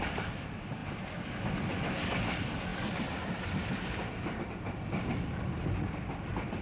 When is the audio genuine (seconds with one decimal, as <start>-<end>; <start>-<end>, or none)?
0.0-6.6